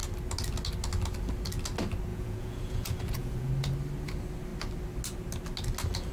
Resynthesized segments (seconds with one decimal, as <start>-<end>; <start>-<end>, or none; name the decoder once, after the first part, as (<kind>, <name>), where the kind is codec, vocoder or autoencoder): 2.1-3.5 (vocoder, Vocos)